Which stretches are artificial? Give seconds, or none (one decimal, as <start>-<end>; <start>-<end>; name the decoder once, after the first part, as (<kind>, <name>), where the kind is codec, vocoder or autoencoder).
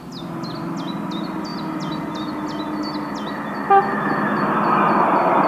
none